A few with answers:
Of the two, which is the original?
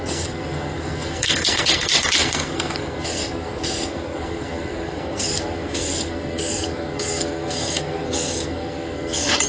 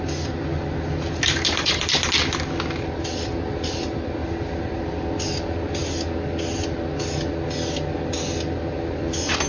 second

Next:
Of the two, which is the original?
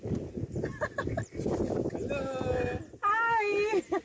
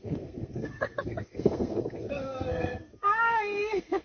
first